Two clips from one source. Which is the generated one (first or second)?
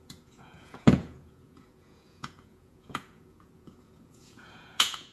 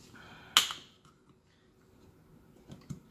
first